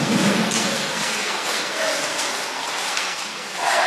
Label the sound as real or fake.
fake